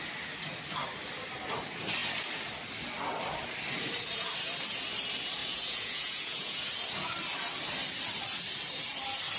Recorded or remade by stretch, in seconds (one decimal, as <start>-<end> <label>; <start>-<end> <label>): 0.0-5.4 recorded; 5.4-6.6 remade; 6.6-9.4 recorded